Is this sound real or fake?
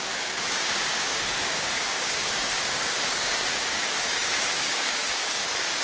fake